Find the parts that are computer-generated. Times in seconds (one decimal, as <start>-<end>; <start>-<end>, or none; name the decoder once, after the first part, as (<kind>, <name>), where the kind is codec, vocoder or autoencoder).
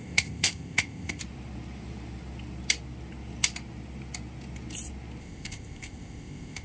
0.0-1.2 (codec, ZipCodec); 5.2-6.6